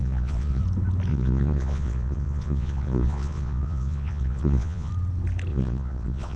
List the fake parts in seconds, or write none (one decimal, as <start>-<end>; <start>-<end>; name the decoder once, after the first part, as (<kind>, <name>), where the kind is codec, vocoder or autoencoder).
0.0-0.6 (vocoder, Vocos); 1.1-4.9; 5.5-6.4